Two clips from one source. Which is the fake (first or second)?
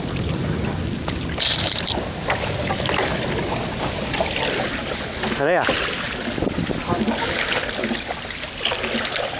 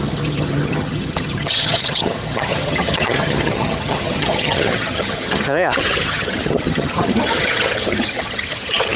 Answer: second